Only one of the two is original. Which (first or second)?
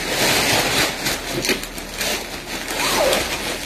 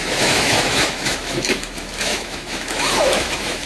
first